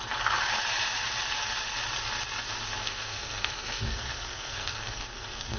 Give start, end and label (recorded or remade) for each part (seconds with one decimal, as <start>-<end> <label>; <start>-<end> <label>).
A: 0.0-2.8 recorded; 2.8-5.6 remade